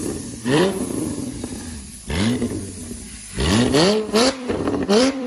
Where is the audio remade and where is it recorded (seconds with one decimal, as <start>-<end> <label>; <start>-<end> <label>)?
0.0-2.8 remade; 2.8-4.1 recorded; 4.1-5.3 remade